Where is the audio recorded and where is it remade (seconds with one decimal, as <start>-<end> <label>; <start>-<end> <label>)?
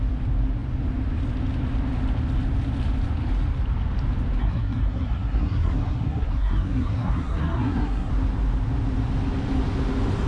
0.0-4.4 recorded; 4.4-8.1 remade; 8.1-10.3 recorded